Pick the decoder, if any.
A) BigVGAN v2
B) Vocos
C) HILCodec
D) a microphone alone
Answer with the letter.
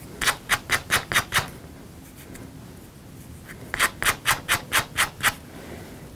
D